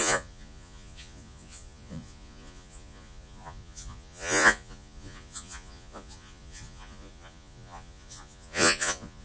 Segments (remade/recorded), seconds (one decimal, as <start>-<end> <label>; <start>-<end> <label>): 0.0-9.2 remade